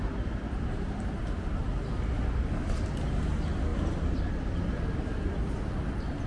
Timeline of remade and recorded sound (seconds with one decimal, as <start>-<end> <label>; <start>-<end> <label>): 0.0-6.3 recorded